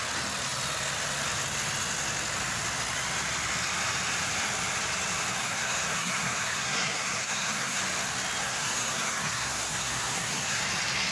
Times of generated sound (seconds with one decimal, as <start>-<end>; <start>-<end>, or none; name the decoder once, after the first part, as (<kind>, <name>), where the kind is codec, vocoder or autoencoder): 5.4-7.8 (codec, SNAC); 8.4-10.6